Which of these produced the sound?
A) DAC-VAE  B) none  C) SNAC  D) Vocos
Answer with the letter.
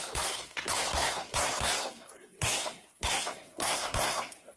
C